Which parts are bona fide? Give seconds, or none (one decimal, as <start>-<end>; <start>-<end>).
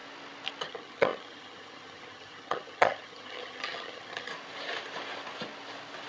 0.0-0.6; 4.3-6.1